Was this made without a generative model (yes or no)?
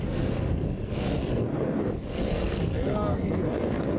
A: no